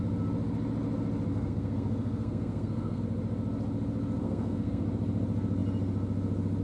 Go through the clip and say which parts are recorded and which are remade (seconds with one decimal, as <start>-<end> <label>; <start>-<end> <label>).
0.0-1.3 recorded; 1.3-3.0 remade; 3.0-4.2 recorded; 4.2-4.8 remade; 4.8-6.6 recorded